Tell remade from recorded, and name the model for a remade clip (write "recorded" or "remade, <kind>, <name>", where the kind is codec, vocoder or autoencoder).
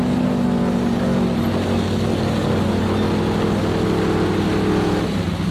recorded